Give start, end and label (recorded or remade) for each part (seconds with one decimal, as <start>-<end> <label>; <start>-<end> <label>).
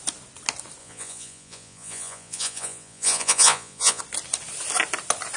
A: 0.0-0.8 recorded; 0.8-4.0 remade; 4.0-5.4 recorded